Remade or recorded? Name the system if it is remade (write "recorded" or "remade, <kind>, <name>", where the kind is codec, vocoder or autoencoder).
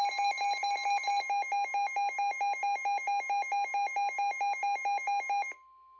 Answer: recorded